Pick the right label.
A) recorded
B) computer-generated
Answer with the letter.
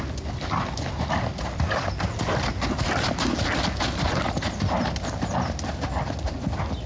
A